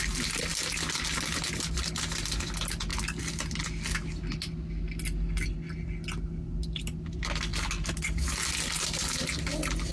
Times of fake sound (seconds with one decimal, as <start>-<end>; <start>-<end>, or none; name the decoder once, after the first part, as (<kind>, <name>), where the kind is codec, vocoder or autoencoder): none